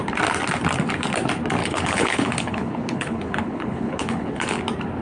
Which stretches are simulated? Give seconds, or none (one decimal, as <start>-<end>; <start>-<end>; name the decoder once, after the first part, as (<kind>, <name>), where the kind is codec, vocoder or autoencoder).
1.6-4.6 (codec, HILCodec)